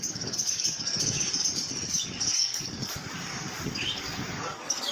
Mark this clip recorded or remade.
remade